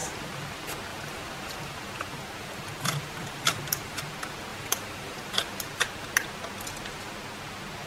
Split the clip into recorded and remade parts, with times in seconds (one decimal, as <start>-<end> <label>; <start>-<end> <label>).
0.0-0.5 remade; 0.5-0.9 recorded; 0.9-4.0 remade; 4.0-4.5 recorded; 4.5-5.6 remade; 5.6-7.9 recorded